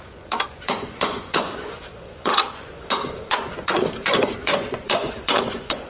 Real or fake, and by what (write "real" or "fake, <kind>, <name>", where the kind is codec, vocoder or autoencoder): fake, vocoder, Vocos